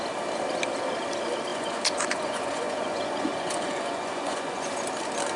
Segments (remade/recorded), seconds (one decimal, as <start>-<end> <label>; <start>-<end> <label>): 0.0-1.5 recorded; 1.5-4.7 remade; 4.7-5.4 recorded